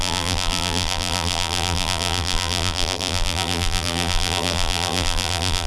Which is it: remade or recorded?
remade